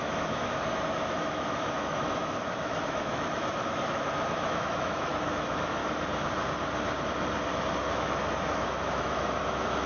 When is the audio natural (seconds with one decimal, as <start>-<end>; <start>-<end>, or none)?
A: 5.8-7.8